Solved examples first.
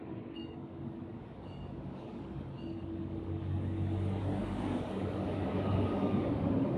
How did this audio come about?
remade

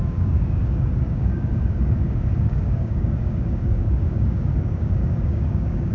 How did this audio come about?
remade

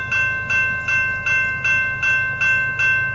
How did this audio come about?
recorded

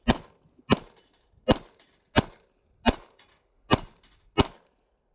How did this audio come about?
recorded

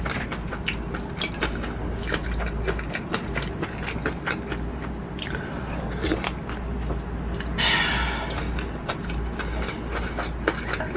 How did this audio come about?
recorded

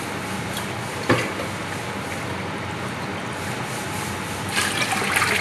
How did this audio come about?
recorded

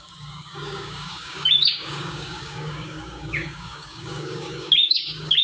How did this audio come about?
remade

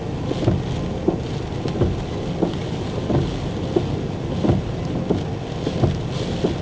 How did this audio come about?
recorded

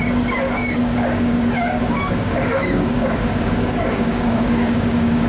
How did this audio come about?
remade